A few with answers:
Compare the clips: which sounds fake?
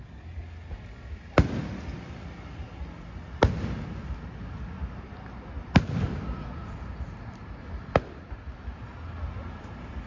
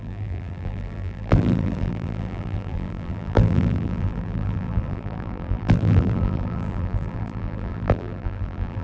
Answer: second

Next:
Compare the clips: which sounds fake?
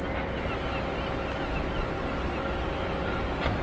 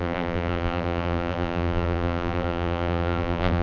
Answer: second